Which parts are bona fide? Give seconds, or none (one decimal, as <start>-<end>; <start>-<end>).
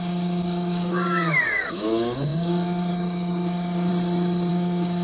3.9-4.5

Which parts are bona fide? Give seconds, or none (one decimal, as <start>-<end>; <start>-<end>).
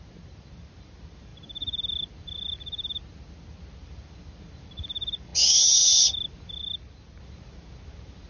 0.0-8.3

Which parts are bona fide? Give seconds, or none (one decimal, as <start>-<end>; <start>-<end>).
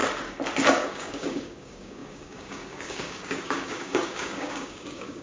0.0-0.7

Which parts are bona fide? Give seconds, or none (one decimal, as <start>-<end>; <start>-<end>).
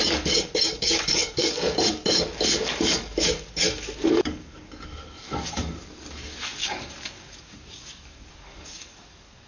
none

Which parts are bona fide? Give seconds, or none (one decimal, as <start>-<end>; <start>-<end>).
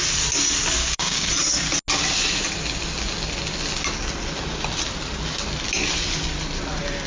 0.0-0.8; 1.3-7.1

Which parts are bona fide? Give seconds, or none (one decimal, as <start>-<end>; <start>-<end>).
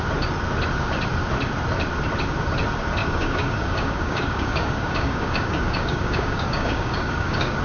0.0-3.0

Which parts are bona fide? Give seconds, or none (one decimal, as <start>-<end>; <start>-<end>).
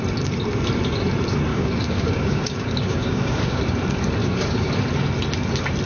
0.0-1.5; 3.6-4.2; 4.7-5.9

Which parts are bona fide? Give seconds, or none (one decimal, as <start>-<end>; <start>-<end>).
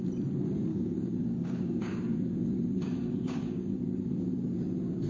0.0-0.7; 3.8-5.1